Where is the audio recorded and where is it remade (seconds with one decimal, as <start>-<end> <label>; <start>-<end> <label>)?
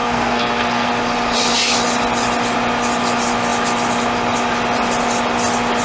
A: 0.0-0.9 remade; 0.9-5.8 recorded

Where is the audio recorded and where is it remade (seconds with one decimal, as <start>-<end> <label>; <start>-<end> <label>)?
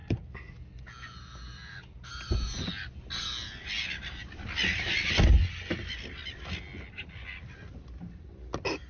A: 0.0-8.9 recorded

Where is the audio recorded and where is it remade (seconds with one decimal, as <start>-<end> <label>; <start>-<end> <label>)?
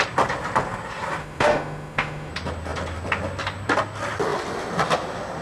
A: 0.0-1.2 recorded; 1.2-2.3 remade; 2.3-5.4 recorded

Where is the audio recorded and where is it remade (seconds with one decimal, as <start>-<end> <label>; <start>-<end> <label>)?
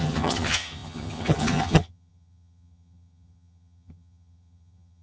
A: 0.0-5.0 remade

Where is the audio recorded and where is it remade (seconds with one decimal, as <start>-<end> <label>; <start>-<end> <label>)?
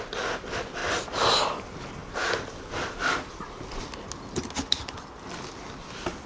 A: 0.0-6.3 recorded